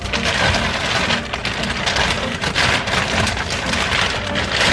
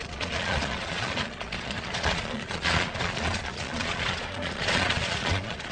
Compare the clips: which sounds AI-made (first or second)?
second